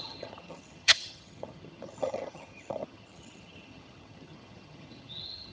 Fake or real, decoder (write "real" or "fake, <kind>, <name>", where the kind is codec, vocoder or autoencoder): fake, vocoder, HiFi-GAN